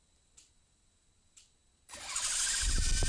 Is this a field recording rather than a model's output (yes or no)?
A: yes